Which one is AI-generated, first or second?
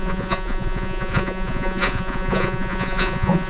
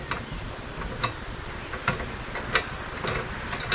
first